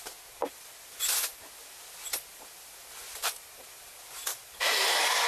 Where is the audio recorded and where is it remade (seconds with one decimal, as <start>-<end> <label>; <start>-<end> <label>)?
0.0-3.0 recorded; 3.0-3.8 remade; 3.8-5.3 recorded